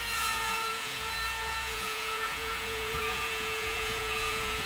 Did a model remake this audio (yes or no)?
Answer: yes